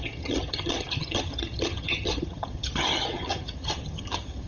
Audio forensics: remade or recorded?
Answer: remade